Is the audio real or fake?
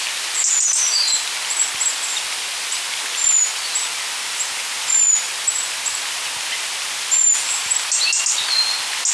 real